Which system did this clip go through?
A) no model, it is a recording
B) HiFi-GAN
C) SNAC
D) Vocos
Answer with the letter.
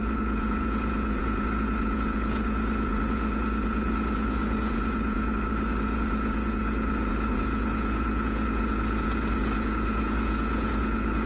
D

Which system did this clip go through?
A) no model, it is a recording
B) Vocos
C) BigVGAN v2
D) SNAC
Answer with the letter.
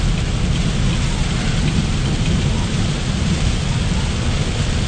A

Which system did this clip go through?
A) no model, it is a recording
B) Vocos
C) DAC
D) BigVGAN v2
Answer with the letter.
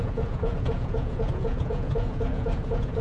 B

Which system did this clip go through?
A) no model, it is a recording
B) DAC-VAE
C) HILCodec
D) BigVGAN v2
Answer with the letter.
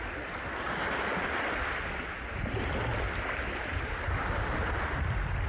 A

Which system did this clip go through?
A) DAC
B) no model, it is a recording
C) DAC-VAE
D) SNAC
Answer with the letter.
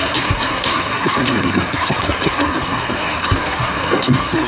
D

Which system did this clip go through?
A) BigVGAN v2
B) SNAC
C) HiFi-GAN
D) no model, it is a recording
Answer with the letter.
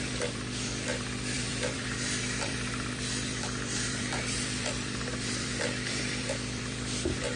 A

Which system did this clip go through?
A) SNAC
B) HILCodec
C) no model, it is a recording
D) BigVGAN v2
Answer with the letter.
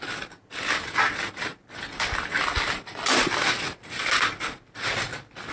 C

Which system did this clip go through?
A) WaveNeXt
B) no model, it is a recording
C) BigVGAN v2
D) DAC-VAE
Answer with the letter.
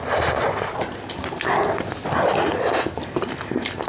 B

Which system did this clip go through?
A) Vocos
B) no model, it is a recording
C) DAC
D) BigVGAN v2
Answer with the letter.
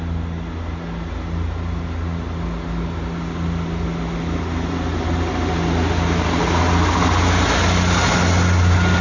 B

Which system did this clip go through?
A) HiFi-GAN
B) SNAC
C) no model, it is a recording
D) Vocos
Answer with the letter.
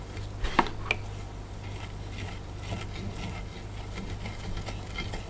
C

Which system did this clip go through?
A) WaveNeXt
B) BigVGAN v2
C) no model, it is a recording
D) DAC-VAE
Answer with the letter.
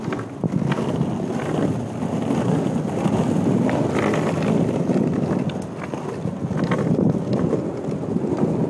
C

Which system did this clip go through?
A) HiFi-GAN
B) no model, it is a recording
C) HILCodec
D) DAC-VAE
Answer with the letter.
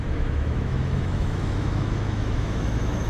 D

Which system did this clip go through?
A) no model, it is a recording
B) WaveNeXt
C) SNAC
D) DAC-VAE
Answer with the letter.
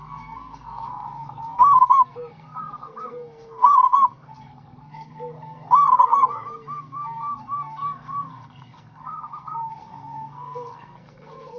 C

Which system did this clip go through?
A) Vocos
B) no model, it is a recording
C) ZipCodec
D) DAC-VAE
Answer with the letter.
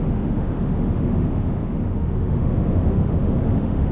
D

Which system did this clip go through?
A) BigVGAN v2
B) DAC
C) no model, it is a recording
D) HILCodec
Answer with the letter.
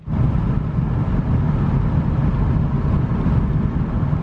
C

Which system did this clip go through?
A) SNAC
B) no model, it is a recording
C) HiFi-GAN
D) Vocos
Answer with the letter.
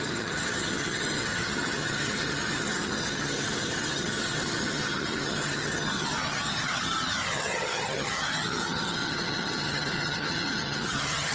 C